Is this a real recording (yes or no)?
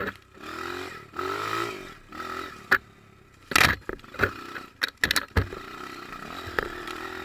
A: yes